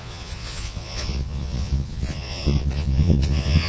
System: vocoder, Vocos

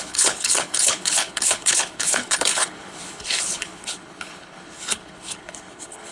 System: codec, HILCodec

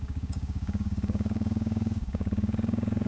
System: codec, DAC